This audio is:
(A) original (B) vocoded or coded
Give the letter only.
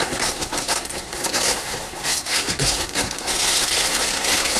B